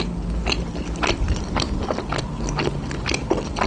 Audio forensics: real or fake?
real